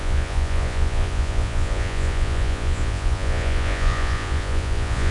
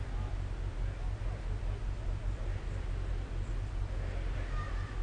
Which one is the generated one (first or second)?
first